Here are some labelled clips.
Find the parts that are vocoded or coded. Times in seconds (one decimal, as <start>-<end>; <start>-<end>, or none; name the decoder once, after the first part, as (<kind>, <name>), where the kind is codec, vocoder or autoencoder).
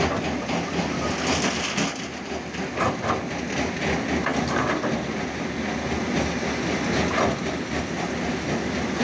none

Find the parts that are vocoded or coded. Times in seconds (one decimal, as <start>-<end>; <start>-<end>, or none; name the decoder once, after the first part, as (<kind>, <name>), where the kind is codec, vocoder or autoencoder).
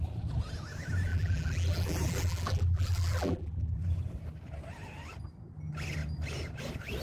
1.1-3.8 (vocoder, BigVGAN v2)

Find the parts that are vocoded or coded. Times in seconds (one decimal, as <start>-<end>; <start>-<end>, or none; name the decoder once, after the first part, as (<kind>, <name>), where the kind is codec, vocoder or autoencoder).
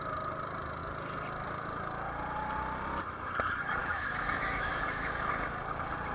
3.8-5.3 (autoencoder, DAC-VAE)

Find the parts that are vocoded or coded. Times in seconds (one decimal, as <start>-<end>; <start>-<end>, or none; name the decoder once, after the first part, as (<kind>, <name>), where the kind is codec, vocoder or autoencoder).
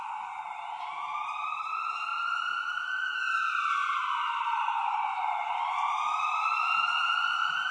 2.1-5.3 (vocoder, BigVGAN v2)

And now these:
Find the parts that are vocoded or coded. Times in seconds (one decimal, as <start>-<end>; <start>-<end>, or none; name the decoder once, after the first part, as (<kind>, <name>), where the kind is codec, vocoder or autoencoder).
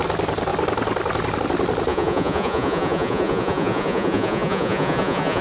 1.9-5.4 (vocoder, Vocos)